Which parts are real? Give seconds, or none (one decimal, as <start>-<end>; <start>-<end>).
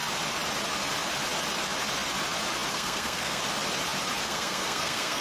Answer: 0.0-2.7; 3.4-4.2